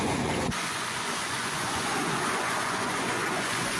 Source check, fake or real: fake